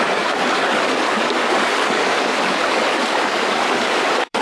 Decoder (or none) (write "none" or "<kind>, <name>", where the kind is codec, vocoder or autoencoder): codec, DAC